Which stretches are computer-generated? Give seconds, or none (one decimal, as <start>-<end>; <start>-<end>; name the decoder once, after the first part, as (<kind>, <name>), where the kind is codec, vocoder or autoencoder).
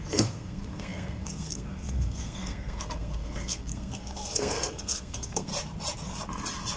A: 0.0-5.5 (codec, SNAC)